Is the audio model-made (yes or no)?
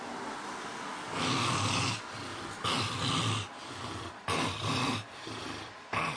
no